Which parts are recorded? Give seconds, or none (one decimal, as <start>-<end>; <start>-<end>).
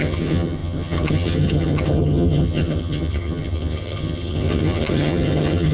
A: none